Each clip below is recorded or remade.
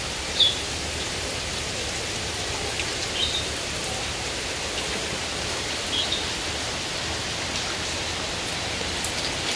recorded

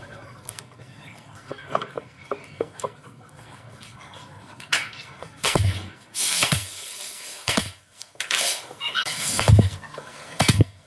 remade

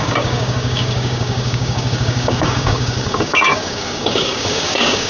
remade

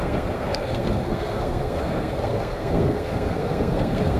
remade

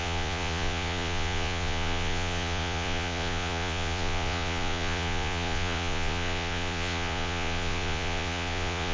remade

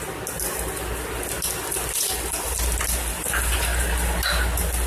recorded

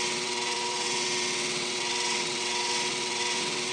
remade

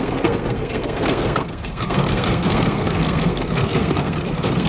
remade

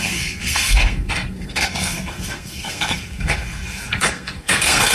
remade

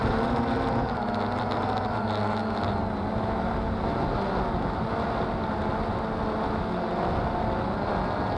recorded